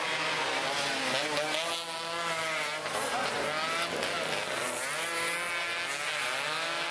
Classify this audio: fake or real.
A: real